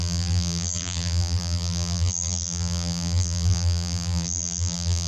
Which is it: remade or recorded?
remade